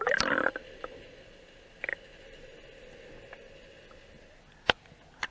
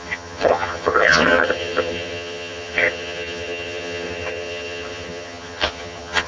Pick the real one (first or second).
first